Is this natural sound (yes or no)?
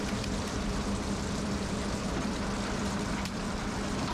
no